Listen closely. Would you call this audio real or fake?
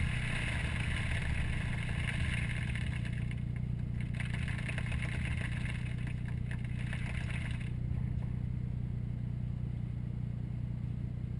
real